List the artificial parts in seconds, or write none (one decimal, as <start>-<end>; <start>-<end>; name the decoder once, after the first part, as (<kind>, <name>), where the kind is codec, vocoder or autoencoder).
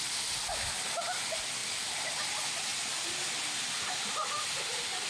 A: none